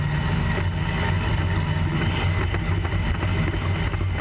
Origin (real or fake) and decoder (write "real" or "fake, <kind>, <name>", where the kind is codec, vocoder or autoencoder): real